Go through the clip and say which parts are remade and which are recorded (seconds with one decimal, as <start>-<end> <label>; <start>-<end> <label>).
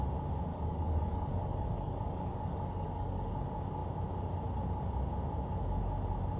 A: 0.0-0.5 recorded; 0.5-3.3 remade; 3.3-6.4 recorded